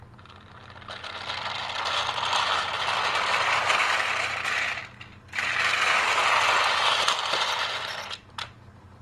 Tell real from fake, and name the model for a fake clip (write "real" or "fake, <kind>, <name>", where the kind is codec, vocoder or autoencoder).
real